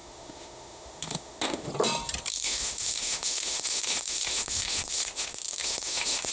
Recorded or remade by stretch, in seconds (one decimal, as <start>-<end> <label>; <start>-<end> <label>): 0.0-1.7 remade; 1.7-2.3 recorded; 2.3-6.3 remade

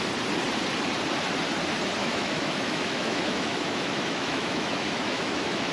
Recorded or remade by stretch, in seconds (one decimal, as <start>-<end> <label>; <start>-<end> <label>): 0.0-2.0 recorded; 2.0-5.7 remade

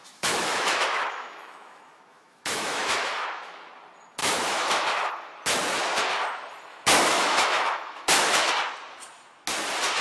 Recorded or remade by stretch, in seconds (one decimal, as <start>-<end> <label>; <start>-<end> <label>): 0.0-3.7 remade; 3.7-4.2 recorded; 4.2-5.1 remade; 5.1-6.7 recorded; 6.7-8.5 remade; 8.5-10.0 recorded

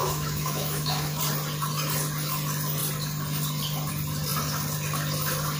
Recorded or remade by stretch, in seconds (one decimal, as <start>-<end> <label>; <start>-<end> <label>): 0.0-1.2 remade; 1.2-5.6 recorded

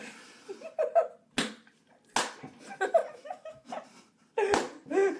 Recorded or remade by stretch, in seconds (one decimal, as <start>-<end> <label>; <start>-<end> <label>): 0.0-3.0 recorded; 3.0-3.7 remade; 3.7-5.2 recorded

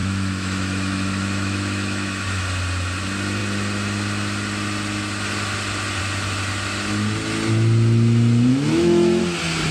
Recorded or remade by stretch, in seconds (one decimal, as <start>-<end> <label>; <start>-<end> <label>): 0.0-2.4 remade; 2.4-8.5 recorded; 8.5-9.2 remade; 9.2-9.7 recorded

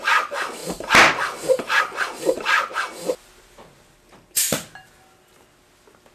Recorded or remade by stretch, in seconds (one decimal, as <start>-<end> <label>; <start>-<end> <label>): 0.0-6.1 recorded